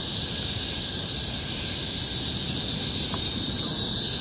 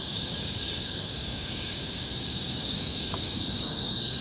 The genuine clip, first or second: first